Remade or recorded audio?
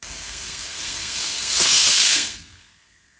remade